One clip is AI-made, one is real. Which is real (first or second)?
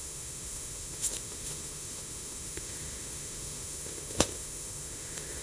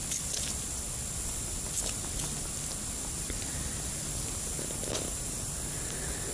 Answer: second